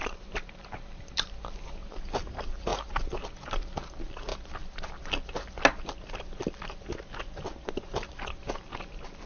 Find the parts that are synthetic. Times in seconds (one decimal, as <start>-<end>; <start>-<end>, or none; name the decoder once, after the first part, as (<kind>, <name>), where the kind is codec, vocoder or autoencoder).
0.0-2.0 (vocoder, BigVGAN v2); 2.7-3.9